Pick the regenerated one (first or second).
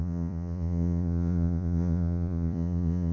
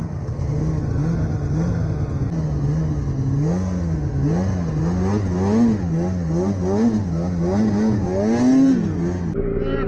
first